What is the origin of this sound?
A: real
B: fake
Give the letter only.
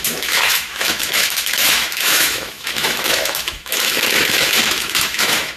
B